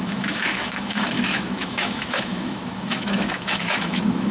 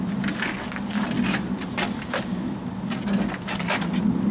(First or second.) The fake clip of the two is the first